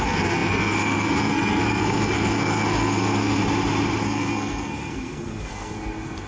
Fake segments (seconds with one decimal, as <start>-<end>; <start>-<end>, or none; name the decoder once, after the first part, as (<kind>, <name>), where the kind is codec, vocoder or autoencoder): 0.0-3.4 (codec, SNAC); 4.0-6.3